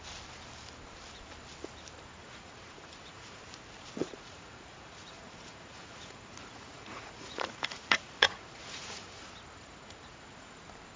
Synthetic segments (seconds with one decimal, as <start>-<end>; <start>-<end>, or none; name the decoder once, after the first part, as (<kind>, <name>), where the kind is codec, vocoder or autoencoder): 2.2-3.4 (vocoder, Vocos); 4.0-9.2; 9.8-10.6